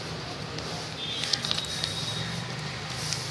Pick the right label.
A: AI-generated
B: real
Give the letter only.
B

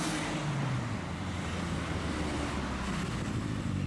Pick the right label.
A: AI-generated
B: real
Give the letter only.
B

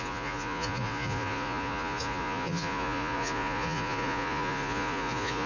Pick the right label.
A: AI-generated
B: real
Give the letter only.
A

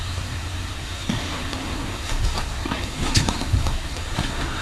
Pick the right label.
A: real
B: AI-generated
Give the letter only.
B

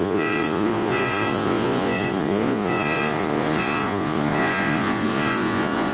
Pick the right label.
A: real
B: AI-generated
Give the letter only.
B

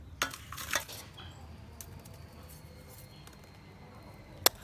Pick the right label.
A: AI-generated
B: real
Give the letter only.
B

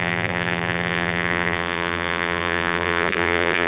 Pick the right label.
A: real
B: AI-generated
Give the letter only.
B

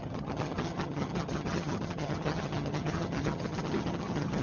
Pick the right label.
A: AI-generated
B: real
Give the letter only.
A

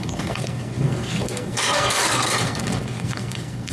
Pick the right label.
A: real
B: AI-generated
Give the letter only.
B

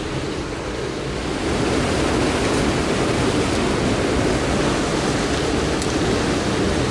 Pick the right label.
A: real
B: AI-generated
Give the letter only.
A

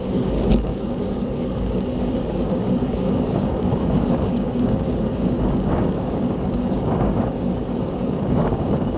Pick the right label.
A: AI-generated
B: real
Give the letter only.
A